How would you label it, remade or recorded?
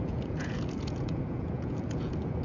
remade